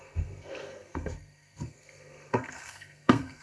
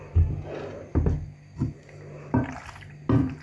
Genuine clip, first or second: second